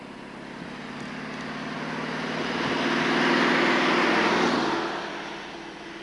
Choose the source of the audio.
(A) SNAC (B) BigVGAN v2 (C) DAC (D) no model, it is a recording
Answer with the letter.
D